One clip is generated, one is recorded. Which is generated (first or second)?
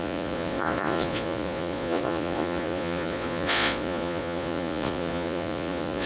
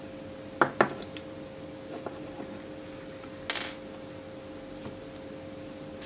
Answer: first